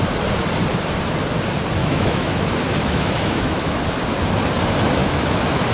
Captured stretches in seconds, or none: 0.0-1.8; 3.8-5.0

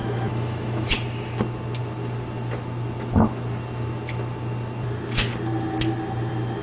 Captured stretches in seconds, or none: 0.9-6.6